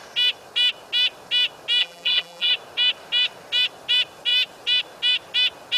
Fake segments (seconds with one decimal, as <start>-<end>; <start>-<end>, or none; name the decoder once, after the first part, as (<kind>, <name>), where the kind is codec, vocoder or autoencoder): 1.8-2.5 (vocoder, BigVGAN v2)